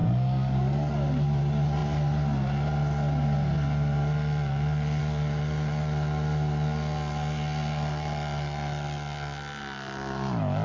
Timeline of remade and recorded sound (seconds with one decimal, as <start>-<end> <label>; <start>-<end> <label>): 0.0-0.9 remade; 0.9-10.6 recorded